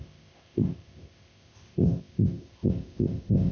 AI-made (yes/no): yes